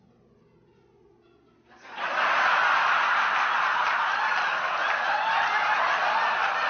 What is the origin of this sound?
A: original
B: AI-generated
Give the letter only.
A